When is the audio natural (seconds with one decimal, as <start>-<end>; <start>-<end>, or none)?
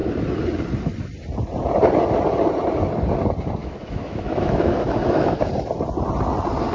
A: 0.0-3.6; 5.5-6.7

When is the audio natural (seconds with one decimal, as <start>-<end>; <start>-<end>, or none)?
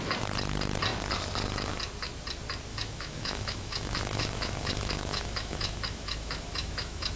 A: 0.0-2.7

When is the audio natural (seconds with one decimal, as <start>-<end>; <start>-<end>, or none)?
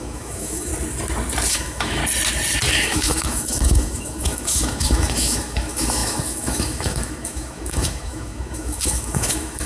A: 0.7-1.5; 2.0-2.7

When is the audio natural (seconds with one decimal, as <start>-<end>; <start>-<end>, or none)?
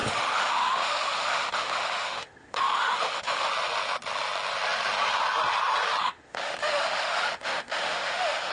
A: 3.5-6.0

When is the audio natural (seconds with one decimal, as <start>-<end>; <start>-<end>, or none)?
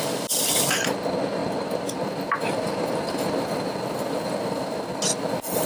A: 0.0-5.7